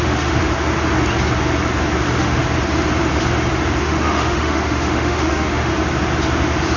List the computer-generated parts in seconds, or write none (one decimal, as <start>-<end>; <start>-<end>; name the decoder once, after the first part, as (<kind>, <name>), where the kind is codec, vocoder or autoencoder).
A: 0.0-0.4 (autoencoder, DAC-VAE); 2.0-2.4; 3.8-5.7